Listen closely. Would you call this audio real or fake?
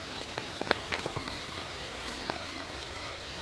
fake